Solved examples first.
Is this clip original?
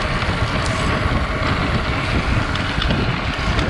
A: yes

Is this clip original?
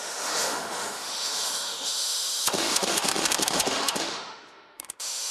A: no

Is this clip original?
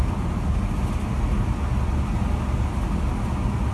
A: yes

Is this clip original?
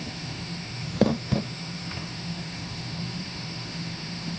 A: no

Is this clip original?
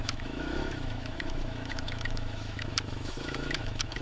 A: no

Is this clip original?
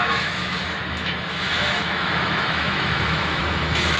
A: no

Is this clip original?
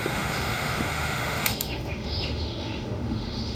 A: no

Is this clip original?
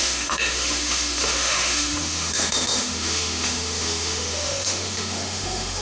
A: no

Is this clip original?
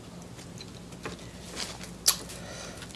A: yes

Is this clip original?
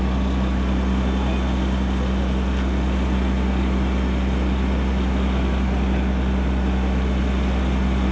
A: yes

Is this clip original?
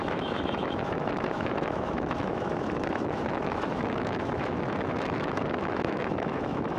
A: no